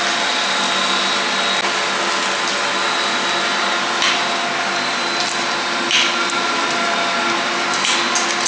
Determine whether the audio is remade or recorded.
recorded